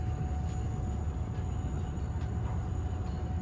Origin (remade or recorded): recorded